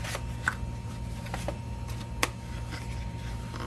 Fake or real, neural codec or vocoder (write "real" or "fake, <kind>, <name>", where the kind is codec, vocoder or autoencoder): real